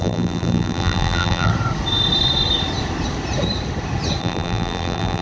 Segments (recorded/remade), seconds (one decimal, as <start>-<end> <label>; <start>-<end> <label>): 0.0-1.5 remade; 1.5-4.2 recorded; 4.2-5.2 remade